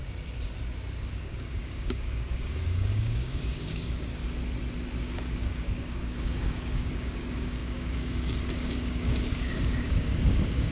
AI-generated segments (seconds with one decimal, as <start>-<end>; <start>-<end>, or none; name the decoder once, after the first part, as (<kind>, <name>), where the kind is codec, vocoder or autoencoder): 1.2-4.2 (codec, DAC); 5.0-10.7